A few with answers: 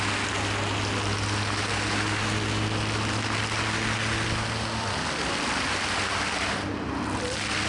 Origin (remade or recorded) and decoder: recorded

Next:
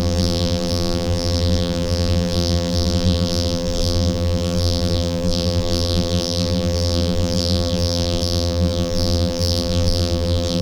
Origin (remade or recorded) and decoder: remade, vocoder, BigVGAN v2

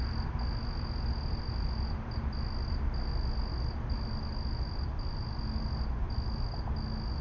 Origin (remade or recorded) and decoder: recorded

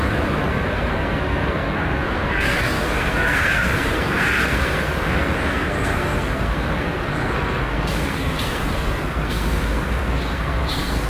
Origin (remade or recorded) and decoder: remade, codec, SNAC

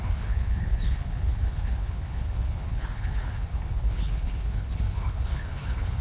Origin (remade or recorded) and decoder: remade, codec, HILCodec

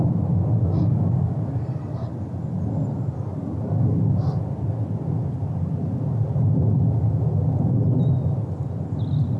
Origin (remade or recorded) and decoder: recorded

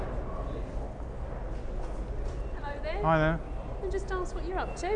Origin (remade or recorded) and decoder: recorded